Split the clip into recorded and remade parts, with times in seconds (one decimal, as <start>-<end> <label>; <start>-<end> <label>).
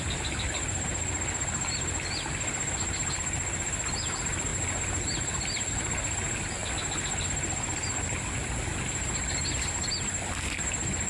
0.0-11.1 recorded